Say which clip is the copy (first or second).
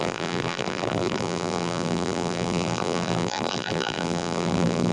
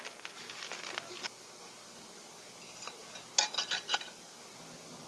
first